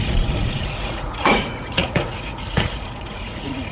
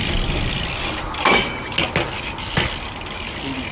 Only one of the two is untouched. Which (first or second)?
second